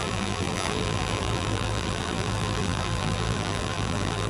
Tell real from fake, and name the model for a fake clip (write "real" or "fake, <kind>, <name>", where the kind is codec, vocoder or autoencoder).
fake, vocoder, BigVGAN v2